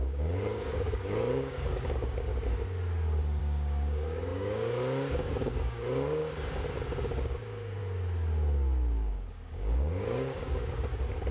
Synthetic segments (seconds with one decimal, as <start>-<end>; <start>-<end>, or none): 0.0-2.3; 3.4-6.2; 7.2-7.8; 9.1-11.3